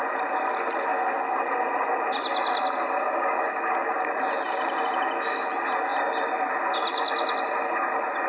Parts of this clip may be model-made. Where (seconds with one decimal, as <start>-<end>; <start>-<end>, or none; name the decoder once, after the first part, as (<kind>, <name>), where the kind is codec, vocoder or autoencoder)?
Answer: none